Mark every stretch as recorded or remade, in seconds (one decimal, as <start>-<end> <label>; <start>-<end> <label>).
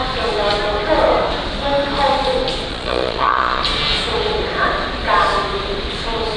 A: 0.0-2.7 recorded; 2.7-3.6 remade; 3.6-6.4 recorded